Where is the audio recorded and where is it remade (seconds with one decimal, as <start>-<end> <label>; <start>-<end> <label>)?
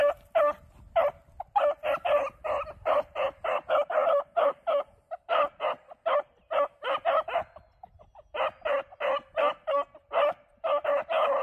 0.0-11.4 recorded